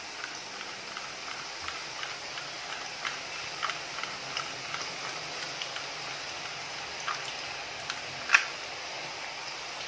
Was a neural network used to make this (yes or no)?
no